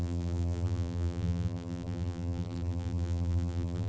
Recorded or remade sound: remade